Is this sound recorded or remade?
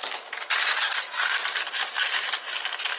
recorded